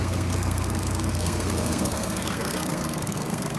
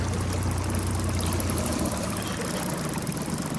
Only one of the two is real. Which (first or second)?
second